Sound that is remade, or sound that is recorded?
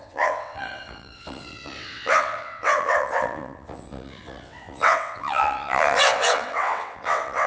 remade